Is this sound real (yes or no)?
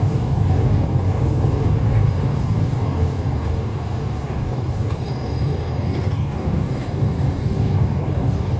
no